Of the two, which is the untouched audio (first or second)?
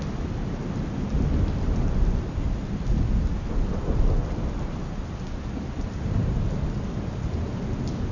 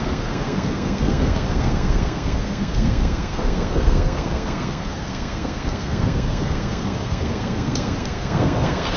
first